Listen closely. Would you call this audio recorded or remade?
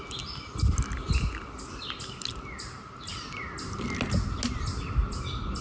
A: recorded